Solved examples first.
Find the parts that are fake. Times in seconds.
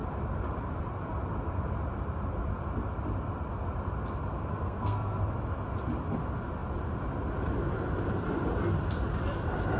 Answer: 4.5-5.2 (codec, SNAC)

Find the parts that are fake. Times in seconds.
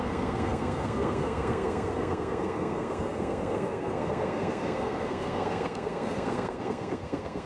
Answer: 0.0-7.5 (codec, SNAC)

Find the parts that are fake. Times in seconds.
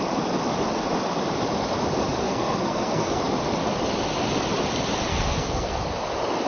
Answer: 2.2-3.2 (codec, SNAC); 5.1-5.8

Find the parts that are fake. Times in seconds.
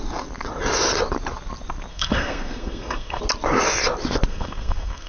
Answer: 1.9-3.2 (codec, SNAC); 4.3-5.1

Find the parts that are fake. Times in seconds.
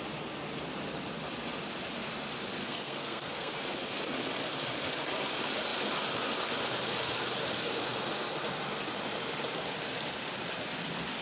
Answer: 2.6-3.5 (codec, SNAC)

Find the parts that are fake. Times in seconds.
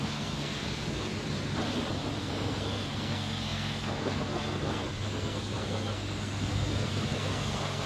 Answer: 0.0-1.1 (codec, SNAC); 2.2-7.9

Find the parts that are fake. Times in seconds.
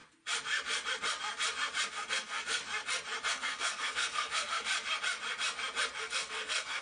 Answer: 1.9-2.6 (codec, SNAC); 3.3-4.7; 6.0-6.8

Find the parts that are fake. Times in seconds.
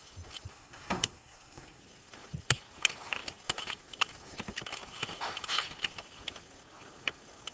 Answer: 0.5-1.8 (codec, SNAC)